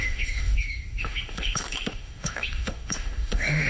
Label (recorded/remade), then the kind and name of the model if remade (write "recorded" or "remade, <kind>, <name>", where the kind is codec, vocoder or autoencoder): remade, autoencoder, DAC-VAE